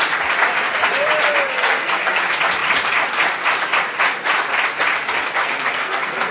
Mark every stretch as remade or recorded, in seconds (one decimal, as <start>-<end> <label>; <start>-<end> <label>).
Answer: 0.0-1.5 recorded; 1.5-2.2 remade; 2.2-5.4 recorded; 5.4-6.3 remade